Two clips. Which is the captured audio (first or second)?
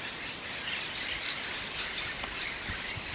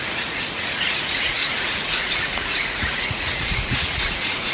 first